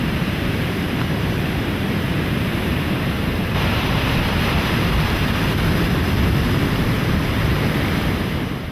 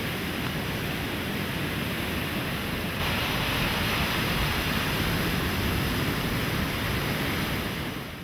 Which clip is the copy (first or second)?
first